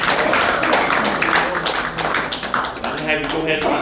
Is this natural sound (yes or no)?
yes